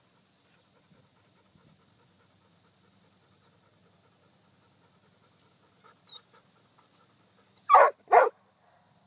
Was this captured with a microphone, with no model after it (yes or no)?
yes